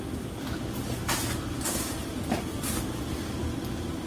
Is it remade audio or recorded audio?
recorded